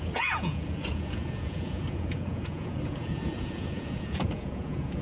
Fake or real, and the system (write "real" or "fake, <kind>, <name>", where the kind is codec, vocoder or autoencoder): fake, vocoder, Vocos